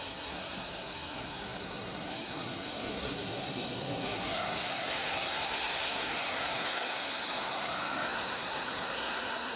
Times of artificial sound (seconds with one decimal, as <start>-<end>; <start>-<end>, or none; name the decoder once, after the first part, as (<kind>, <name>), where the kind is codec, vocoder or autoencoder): 0.0-9.6 (codec, SNAC)